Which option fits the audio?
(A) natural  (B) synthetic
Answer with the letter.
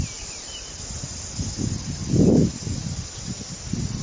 A